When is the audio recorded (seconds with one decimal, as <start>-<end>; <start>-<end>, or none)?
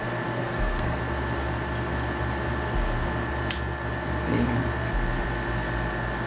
0.0-0.4; 1.0-6.3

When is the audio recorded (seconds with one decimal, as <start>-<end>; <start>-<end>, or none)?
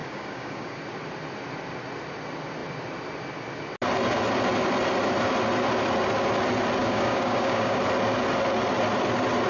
0.8-6.8; 7.8-9.5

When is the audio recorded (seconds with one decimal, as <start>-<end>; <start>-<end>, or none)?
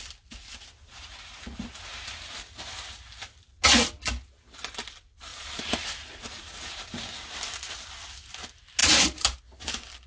0.0-5.3; 6.8-8.8; 9.4-10.1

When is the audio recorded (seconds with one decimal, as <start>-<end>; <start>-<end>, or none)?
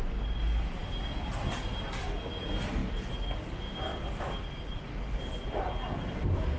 0.0-0.8; 1.3-3.9; 5.7-6.6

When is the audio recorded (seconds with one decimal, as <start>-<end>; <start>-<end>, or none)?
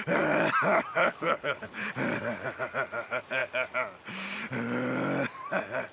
0.0-1.0; 1.9-5.9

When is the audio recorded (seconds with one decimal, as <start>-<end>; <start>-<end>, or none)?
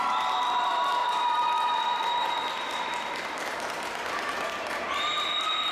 0.0-5.7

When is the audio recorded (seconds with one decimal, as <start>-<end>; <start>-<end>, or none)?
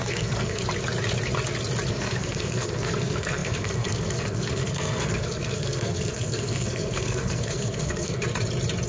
0.6-1.9; 8.2-8.9